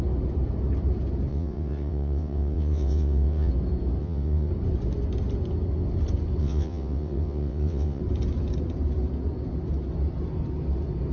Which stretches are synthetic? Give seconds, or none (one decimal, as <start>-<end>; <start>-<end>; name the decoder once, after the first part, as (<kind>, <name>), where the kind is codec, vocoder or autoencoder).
1.3-3.5 (vocoder, WaveNeXt); 4.0-4.5; 6.4-8.0